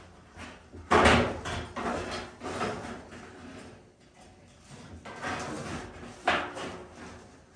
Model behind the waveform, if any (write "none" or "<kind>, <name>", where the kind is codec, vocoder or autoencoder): none